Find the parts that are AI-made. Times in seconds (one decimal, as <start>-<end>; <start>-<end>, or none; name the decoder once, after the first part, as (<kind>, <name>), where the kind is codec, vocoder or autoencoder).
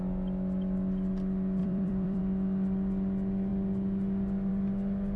1.6-2.2 (vocoder, BigVGAN v2)